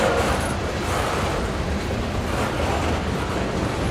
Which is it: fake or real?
real